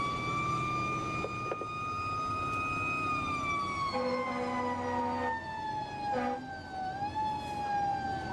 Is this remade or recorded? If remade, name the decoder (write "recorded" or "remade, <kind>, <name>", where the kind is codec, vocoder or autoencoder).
recorded